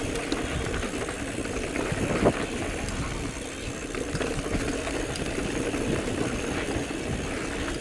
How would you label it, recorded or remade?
recorded